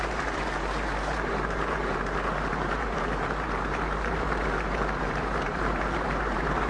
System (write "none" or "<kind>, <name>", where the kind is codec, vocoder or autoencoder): vocoder, BigVGAN v2